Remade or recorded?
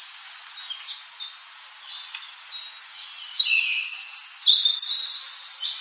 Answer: recorded